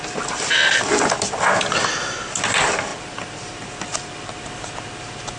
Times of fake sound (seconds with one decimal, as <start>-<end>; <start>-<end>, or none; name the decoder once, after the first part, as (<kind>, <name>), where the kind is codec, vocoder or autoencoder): none